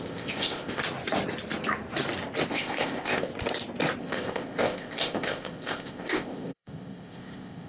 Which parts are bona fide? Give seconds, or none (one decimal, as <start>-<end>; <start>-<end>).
0.8-2.5; 3.3-4.0